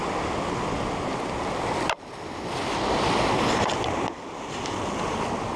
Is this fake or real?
real